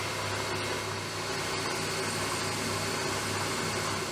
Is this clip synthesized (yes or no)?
no